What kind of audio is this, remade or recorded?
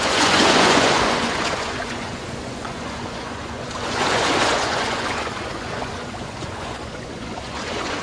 remade